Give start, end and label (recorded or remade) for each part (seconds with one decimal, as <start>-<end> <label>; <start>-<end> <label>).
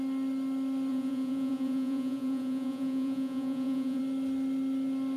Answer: 0.0-0.9 recorded; 0.9-4.0 remade; 4.0-5.2 recorded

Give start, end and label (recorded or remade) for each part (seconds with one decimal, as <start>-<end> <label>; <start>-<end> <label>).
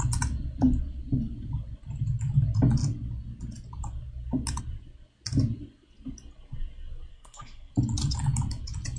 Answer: 0.0-7.1 recorded; 7.1-7.7 remade; 7.7-9.0 recorded